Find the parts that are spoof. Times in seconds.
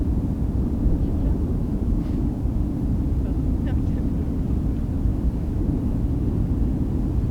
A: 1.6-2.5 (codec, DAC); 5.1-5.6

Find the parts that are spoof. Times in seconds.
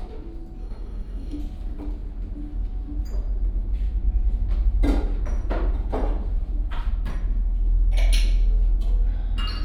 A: 0.6-1.4 (codec, DAC)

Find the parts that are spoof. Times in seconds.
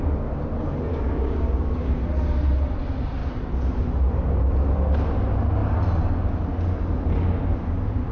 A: 0.9-2.0 (codec, DAC)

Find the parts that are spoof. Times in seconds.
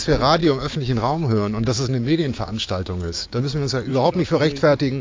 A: 0.4-3.4 (codec, DAC); 3.9-4.4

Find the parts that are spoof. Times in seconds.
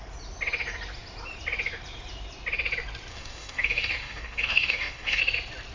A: 3.1-5.2 (codec, DAC)